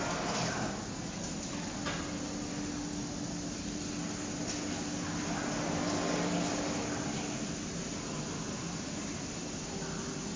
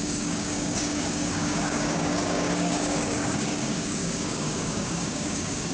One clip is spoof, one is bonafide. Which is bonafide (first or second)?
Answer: first